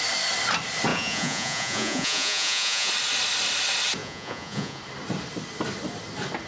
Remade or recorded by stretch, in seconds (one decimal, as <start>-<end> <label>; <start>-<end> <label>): 0.0-0.9 recorded; 0.9-2.9 remade; 2.9-4.0 recorded; 4.0-4.8 remade; 4.8-6.5 recorded